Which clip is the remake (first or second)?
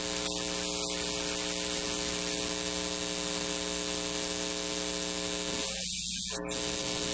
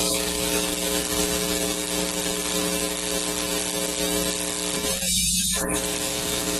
second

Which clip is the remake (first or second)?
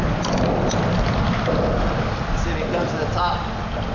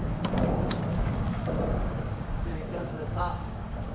second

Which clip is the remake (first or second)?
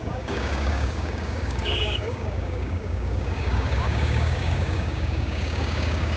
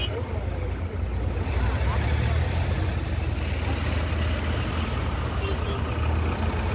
first